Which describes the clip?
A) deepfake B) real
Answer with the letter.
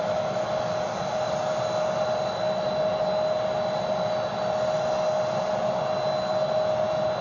B